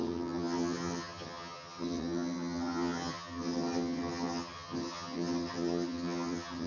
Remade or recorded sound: remade